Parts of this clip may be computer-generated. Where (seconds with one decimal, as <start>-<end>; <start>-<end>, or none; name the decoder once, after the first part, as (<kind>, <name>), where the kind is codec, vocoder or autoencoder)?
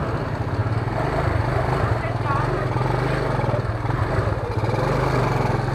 none